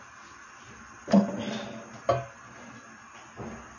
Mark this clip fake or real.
real